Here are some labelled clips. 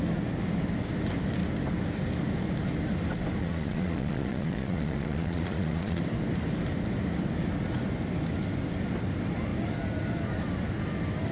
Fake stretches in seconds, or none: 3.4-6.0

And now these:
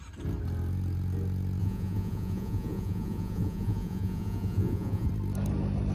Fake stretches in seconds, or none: 1.6-5.1

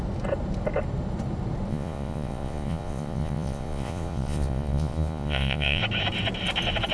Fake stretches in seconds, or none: 1.7-5.8

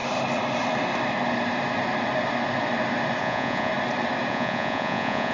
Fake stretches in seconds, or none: 3.2-3.7; 4.3-5.3